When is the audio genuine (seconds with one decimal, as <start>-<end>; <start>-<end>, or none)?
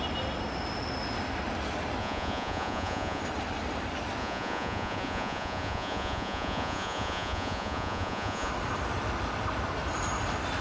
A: 0.0-2.0; 3.2-4.2; 8.5-10.6